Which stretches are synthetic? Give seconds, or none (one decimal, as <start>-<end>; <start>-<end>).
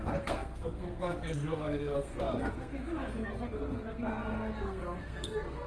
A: 0.0-5.7